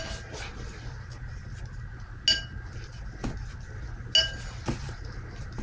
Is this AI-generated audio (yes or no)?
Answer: no